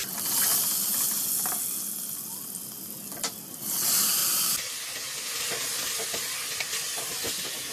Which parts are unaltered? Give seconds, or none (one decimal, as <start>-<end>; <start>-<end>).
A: 0.0-7.7